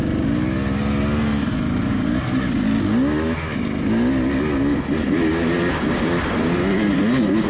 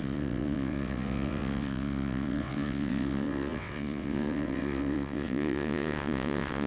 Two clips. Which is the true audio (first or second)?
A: first